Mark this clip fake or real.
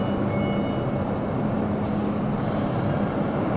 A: real